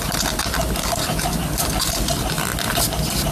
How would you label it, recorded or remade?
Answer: recorded